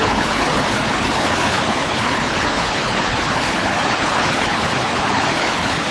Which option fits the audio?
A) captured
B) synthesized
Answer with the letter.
B